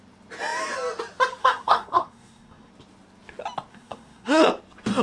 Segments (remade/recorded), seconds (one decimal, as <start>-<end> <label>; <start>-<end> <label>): 0.0-1.4 recorded; 1.4-2.7 remade; 2.7-3.7 recorded; 3.7-4.4 remade; 4.4-5.0 recorded